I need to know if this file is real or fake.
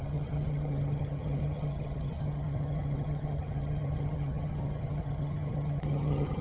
fake